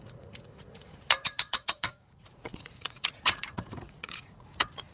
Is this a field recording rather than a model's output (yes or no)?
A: no